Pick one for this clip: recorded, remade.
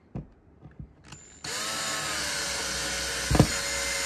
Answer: recorded